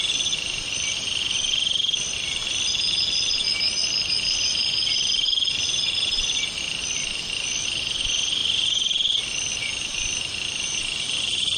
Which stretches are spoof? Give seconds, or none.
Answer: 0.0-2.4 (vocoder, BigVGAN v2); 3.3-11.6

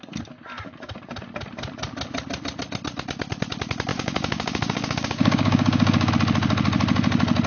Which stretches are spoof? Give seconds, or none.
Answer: 3.9-6.1 (codec, DAC)